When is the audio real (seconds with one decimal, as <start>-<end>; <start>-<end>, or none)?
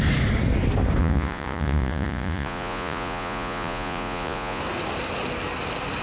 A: 0.0-1.0; 4.6-6.0